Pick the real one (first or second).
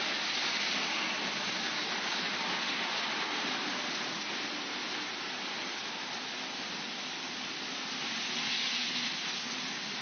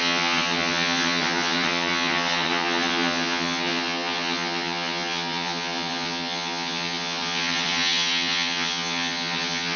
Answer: first